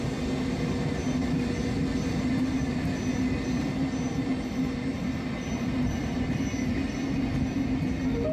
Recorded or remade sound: recorded